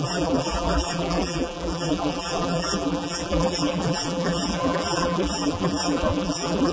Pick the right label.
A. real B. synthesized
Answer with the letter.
B